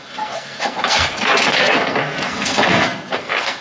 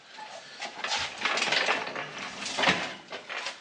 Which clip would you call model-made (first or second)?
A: first